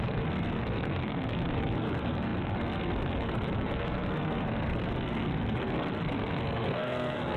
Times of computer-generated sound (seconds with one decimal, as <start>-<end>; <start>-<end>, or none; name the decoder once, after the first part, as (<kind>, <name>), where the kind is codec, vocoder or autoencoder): 0.0-7.4 (codec, SNAC)